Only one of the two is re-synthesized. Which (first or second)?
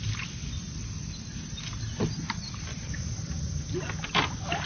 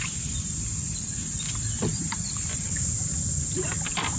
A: second